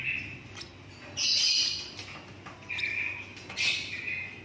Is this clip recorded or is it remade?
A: recorded